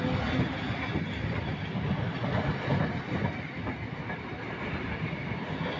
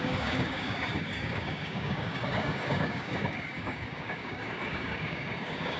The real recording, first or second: first